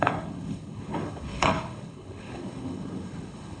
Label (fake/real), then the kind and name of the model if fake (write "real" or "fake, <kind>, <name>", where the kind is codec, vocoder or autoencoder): fake, codec, HILCodec